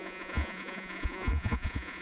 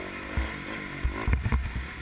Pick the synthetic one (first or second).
first